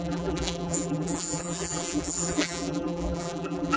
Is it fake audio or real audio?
fake